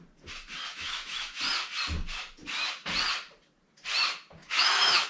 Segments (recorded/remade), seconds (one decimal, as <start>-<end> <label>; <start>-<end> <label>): 0.0-0.7 recorded; 0.7-1.4 remade; 1.4-4.4 recorded; 4.4-5.1 remade

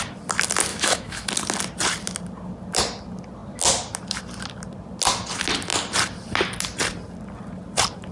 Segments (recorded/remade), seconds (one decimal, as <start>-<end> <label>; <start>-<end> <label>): 0.0-0.7 recorded; 0.7-1.3 remade; 1.3-8.1 recorded

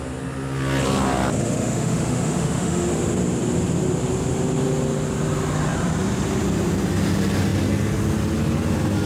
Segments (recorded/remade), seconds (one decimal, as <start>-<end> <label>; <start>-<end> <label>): 0.0-1.4 recorded; 1.4-2.9 remade; 2.9-9.1 recorded

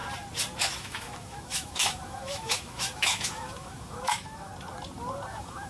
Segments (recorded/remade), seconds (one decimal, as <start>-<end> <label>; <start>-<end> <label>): 0.0-0.6 recorded; 0.6-4.5 remade; 4.5-5.3 recorded; 5.3-5.7 remade